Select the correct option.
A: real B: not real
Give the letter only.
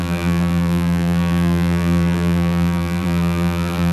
B